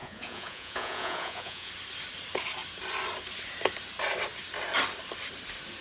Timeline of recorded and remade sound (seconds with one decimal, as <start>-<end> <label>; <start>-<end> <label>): 0.0-1.7 remade; 1.7-5.8 recorded